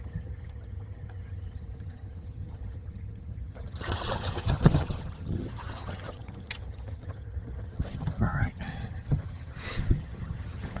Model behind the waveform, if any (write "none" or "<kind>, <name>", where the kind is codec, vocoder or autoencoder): vocoder, HiFi-GAN